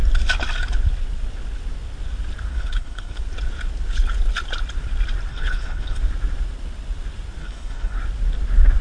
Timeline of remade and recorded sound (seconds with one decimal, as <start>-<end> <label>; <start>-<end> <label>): 0.0-2.5 recorded; 2.5-3.2 remade; 3.2-5.3 recorded; 5.3-6.0 remade; 6.0-7.4 recorded; 7.4-8.0 remade; 8.0-8.8 recorded